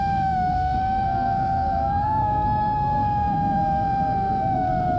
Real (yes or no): no